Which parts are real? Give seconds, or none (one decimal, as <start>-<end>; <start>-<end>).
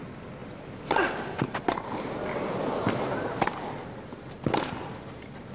0.0-5.5